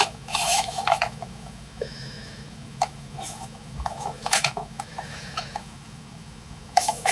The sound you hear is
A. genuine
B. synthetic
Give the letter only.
B